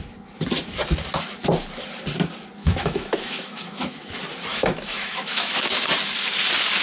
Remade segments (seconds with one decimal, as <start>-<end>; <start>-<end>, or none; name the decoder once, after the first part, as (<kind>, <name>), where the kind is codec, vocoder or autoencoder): 2.6-4.1 (autoencoder, DAC-VAE); 4.5-5.7